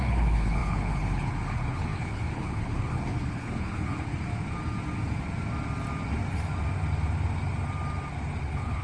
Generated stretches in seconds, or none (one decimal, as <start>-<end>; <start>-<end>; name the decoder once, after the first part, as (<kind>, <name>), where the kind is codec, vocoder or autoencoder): 0.0-4.1 (codec, HILCodec); 8.4-8.8